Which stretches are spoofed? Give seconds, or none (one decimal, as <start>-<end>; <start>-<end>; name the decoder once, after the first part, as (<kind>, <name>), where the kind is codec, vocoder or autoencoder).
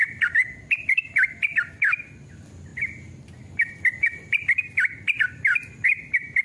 0.0-6.4 (vocoder, BigVGAN v2)